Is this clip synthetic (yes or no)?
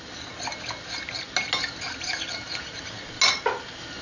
no